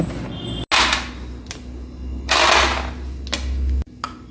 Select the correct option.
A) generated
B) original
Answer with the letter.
B